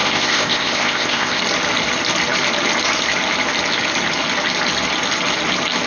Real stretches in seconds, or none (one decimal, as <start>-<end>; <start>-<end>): 1.4-5.9